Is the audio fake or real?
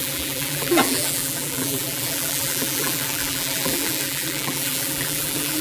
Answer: fake